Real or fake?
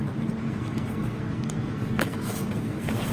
fake